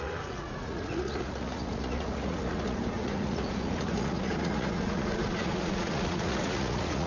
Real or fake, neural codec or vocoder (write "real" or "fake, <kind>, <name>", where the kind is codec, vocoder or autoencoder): fake, vocoder, Vocos